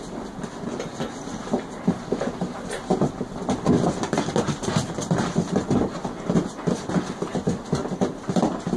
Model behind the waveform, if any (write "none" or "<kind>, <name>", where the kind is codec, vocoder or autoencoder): none